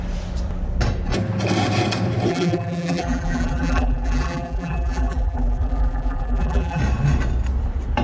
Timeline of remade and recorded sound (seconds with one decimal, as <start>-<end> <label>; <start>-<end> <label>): 0.0-2.3 recorded; 2.3-6.8 remade; 6.8-8.0 recorded